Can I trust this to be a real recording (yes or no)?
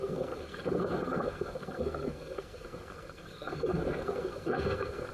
no